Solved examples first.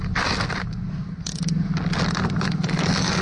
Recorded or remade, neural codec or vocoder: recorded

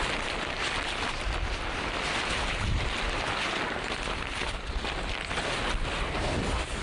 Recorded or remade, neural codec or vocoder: recorded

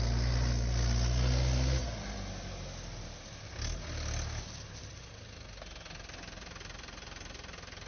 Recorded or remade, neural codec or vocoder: recorded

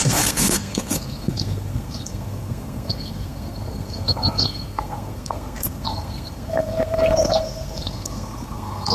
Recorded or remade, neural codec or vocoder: remade, codec, SNAC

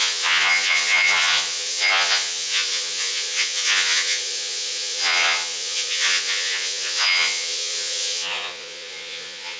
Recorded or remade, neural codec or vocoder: remade, vocoder, Vocos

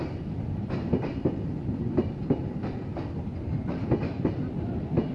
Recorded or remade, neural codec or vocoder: recorded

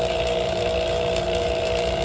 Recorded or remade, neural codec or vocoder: remade, vocoder, BigVGAN v2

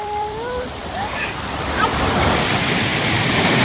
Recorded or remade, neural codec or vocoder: remade, vocoder, BigVGAN v2